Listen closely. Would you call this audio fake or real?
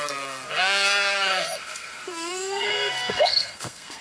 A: fake